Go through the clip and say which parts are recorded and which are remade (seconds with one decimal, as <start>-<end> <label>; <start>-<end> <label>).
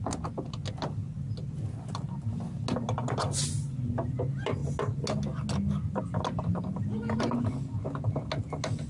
0.0-8.9 recorded